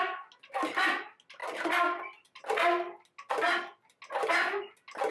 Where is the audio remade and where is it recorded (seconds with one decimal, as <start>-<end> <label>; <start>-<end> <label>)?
0.0-5.1 recorded